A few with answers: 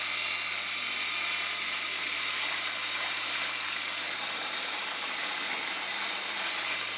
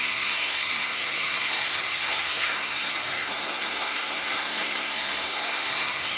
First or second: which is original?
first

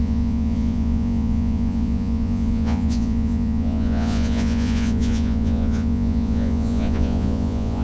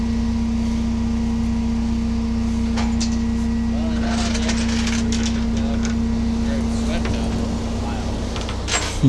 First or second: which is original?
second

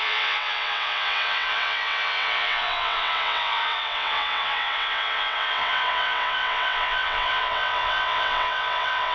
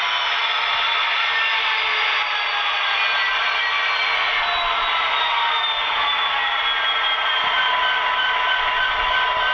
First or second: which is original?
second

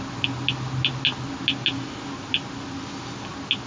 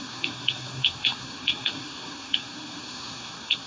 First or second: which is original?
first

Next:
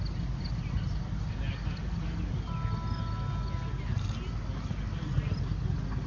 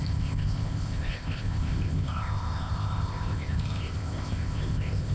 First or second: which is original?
first